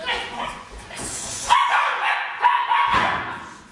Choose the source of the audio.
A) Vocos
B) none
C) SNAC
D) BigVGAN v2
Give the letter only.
A